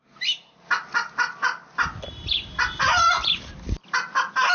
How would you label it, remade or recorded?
recorded